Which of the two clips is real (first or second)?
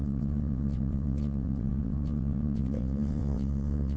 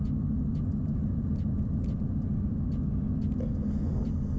second